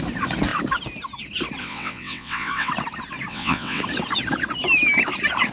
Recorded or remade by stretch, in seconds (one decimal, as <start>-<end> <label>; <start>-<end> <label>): 0.0-1.6 recorded; 1.6-2.7 remade; 2.7-3.3 recorded; 3.3-3.8 remade; 3.8-5.5 recorded